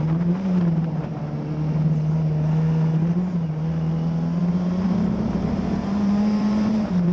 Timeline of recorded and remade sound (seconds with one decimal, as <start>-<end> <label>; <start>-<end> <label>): 0.0-1.1 remade; 1.1-4.4 recorded; 4.4-7.1 remade